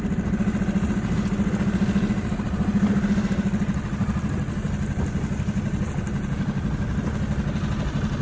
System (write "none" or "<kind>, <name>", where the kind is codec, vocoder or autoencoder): none